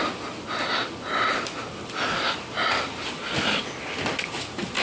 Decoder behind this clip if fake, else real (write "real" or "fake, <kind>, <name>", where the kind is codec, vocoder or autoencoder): real